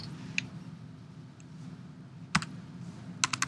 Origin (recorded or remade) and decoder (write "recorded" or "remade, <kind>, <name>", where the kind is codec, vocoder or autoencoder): recorded